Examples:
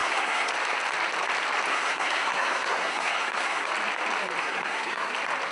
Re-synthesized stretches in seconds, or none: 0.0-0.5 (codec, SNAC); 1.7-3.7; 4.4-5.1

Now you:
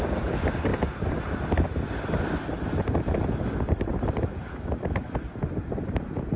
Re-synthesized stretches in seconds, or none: none

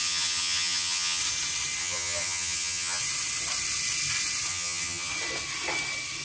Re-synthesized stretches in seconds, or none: 0.0-1.2 (vocoder, HiFi-GAN); 1.8-3.0; 4.5-5.1